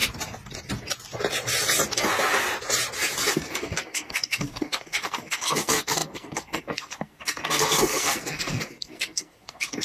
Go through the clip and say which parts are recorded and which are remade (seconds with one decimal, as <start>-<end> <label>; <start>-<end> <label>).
0.0-3.3 recorded; 3.3-9.8 remade